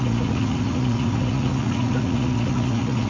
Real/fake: fake